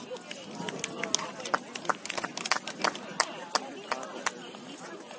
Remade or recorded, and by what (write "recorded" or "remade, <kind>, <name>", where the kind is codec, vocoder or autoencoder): recorded